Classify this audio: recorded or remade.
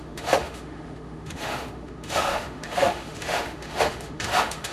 remade